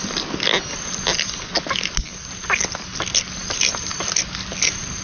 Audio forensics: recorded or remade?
recorded